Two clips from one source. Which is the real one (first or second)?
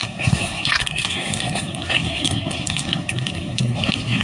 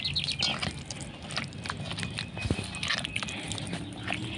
second